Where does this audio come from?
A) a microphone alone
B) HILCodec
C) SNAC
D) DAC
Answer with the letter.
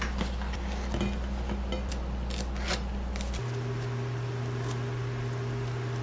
A